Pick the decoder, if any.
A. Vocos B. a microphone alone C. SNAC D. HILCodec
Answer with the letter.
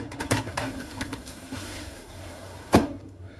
C